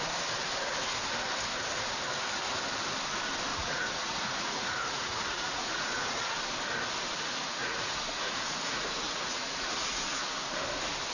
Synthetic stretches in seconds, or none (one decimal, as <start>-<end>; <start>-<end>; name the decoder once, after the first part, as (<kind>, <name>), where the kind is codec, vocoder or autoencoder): 3.5-6.4 (vocoder, Vocos); 7.6-10.5